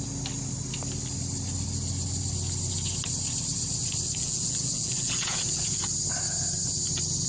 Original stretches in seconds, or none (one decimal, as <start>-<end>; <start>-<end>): 0.0-4.2; 5.9-7.3